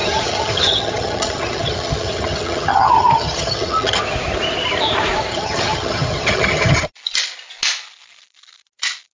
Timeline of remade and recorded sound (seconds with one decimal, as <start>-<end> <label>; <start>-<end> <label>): 0.0-4.0 remade; 4.0-5.3 recorded; 5.3-6.9 remade; 6.9-9.1 recorded